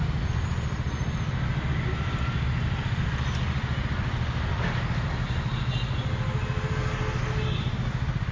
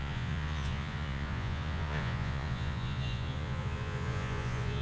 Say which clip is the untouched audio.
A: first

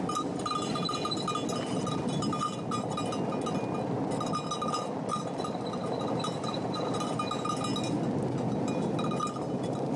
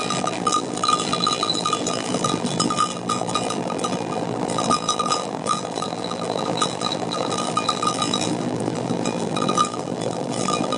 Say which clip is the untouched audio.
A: first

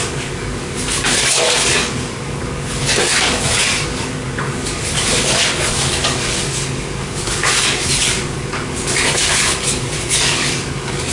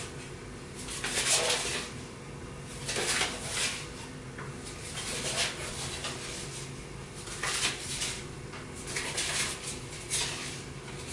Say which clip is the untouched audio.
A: second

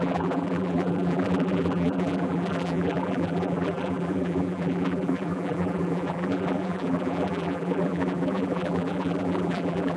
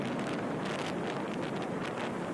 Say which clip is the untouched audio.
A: second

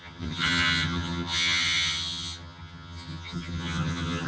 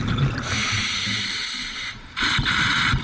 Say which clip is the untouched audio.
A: second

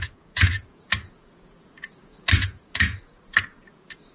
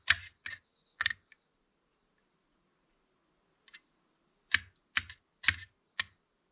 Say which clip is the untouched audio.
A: second